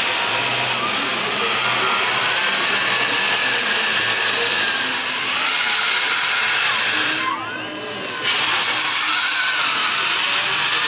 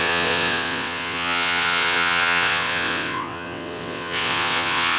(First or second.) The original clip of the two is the first